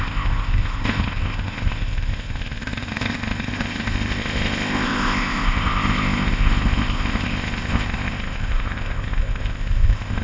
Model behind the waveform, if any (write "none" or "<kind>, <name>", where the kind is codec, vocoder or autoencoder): codec, ZipCodec